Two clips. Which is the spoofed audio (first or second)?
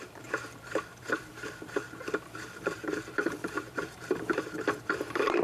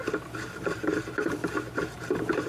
first